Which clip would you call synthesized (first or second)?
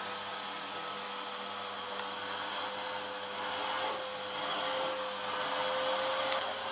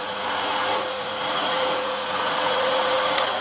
second